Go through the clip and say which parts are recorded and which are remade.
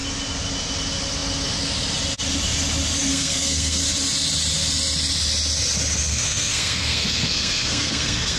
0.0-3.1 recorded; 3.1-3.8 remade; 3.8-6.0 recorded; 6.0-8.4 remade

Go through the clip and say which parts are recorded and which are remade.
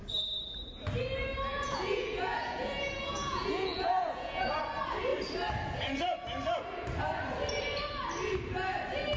0.0-1.5 recorded; 1.5-4.5 remade; 4.5-9.2 recorded